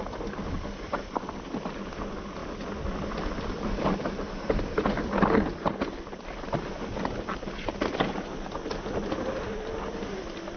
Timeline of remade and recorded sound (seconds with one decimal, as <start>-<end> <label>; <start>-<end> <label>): 0.0-10.6 recorded